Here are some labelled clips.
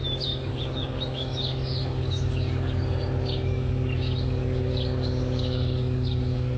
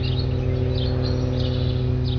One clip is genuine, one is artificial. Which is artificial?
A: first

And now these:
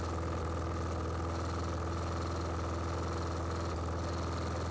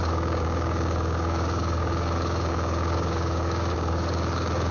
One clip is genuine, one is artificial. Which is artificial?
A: second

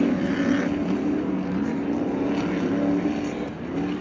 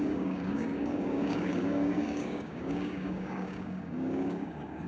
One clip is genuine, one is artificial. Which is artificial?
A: second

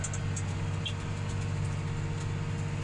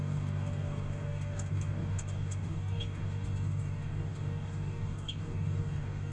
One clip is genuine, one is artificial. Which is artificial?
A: second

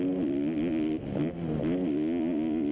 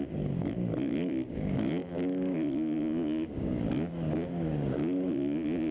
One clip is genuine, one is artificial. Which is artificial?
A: second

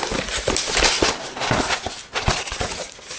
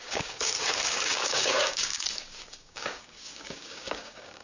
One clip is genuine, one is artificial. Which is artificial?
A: second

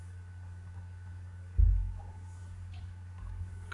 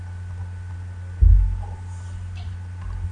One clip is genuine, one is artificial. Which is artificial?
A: first